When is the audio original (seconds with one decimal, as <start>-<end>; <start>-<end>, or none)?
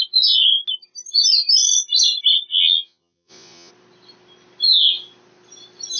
0.0-2.5; 3.7-6.0